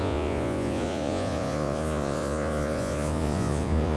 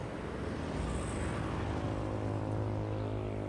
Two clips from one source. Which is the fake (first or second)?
first